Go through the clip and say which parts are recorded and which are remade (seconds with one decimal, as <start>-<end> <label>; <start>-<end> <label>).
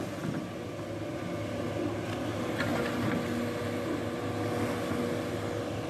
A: 0.0-5.9 recorded